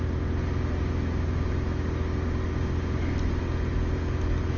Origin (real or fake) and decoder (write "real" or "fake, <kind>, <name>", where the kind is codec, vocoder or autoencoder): real